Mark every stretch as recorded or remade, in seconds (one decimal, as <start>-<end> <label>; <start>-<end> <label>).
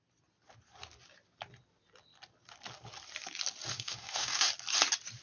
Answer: 0.0-3.7 recorded; 3.7-4.5 remade; 4.5-5.2 recorded